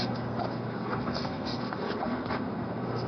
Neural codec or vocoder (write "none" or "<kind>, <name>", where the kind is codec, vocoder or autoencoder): codec, SNAC